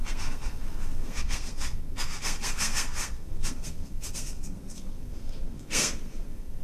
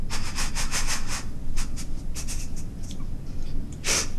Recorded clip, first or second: second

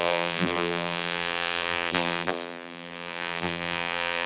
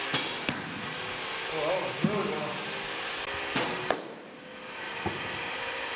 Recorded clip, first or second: second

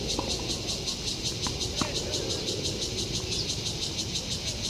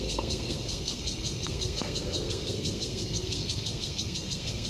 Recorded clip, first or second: first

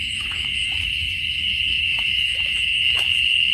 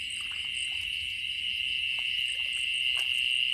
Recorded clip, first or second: second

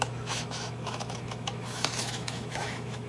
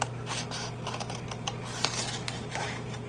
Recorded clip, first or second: second